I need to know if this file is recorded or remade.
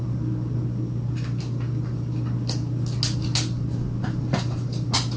recorded